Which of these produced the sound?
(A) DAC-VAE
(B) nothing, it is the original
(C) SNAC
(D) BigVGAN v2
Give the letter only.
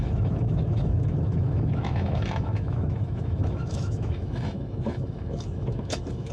A